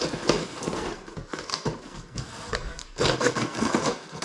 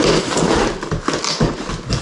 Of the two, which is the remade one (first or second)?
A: first